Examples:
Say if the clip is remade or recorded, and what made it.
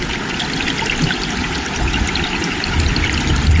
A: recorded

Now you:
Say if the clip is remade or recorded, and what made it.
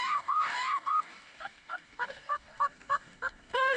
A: remade, codec, DAC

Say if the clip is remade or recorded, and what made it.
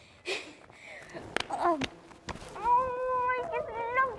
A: recorded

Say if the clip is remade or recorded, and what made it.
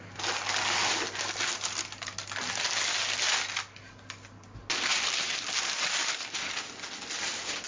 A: recorded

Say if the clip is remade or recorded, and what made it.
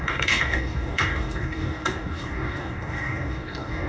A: remade, codec, DAC